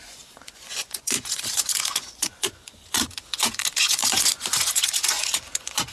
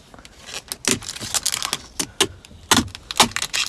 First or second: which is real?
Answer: second